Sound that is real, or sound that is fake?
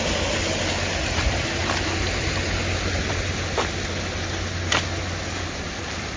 real